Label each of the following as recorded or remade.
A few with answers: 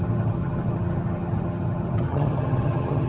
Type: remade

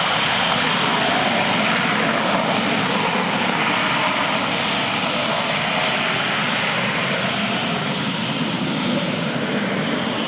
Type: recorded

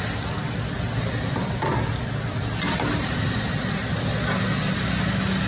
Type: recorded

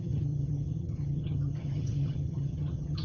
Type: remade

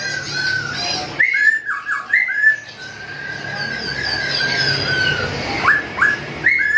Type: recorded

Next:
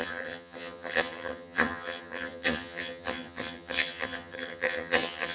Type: remade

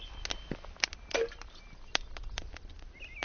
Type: recorded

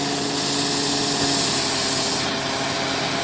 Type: recorded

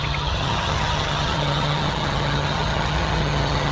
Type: remade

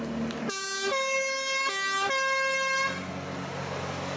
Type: recorded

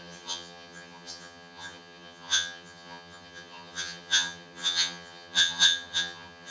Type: remade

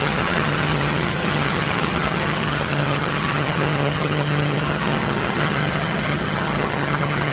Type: remade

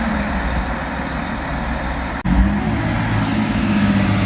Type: recorded